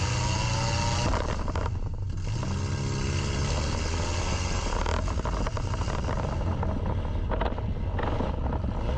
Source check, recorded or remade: recorded